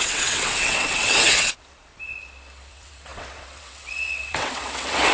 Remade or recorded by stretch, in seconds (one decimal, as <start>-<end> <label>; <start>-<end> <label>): 0.0-1.9 remade; 1.9-2.7 recorded; 2.7-5.1 remade